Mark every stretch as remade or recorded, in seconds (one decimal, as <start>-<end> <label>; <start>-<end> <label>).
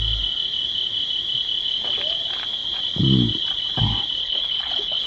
0.0-4.2 recorded; 4.2-5.1 remade